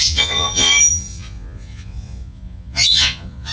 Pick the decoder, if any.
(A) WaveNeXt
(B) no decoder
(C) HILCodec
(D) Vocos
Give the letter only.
D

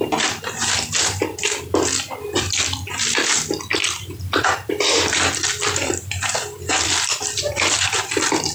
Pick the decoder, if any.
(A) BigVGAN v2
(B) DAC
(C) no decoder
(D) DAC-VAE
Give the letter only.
A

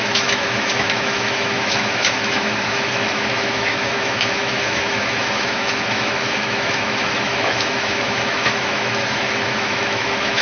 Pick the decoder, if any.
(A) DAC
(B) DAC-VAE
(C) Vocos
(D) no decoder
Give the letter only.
B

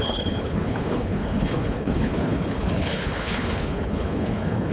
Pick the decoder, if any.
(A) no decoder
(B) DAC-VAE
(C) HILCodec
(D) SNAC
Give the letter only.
C